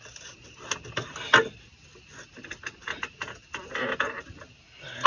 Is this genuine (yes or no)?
yes